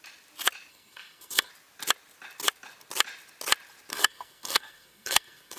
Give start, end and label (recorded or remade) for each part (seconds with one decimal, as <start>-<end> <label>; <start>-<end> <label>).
0.0-0.7 recorded; 0.7-1.5 remade; 1.5-3.9 recorded; 3.9-5.6 remade